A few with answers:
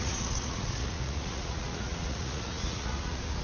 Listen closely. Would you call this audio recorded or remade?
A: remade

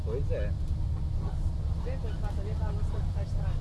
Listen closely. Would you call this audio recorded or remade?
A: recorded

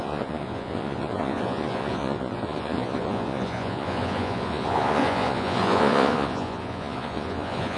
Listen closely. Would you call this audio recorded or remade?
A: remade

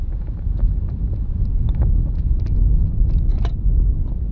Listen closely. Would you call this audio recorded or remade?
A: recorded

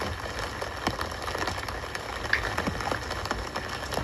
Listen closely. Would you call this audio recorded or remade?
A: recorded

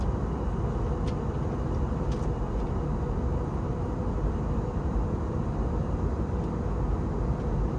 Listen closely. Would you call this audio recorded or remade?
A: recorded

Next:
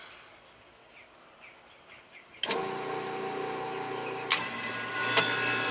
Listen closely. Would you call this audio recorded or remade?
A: recorded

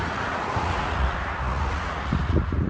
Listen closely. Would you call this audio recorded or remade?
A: remade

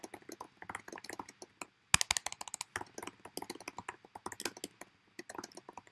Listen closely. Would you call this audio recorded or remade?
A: recorded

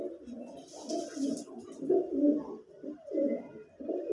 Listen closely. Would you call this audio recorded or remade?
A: recorded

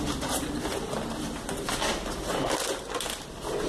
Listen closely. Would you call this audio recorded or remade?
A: recorded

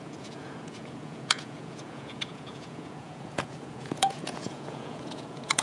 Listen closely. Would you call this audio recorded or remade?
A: remade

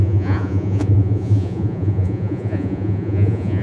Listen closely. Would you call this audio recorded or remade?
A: remade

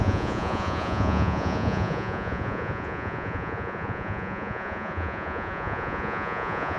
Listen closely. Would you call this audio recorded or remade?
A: remade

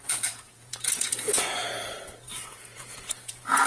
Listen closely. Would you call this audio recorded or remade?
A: remade